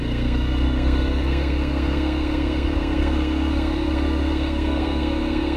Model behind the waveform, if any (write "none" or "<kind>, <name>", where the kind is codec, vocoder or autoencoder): codec, SNAC